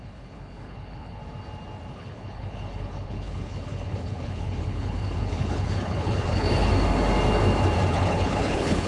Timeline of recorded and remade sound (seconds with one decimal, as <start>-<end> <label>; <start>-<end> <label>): 0.0-1.2 remade; 1.2-1.9 recorded; 1.9-6.7 remade; 6.7-7.9 recorded; 7.9-8.9 remade